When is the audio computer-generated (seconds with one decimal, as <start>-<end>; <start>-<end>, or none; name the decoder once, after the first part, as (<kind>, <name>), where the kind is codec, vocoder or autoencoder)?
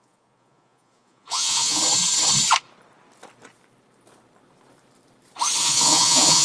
0.0-1.8 (vocoder, Vocos); 5.6-6.4